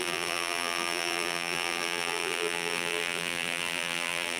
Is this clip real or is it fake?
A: fake